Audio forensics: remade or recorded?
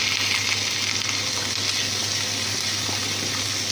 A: recorded